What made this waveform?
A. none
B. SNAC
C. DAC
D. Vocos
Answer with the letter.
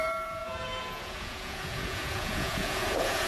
D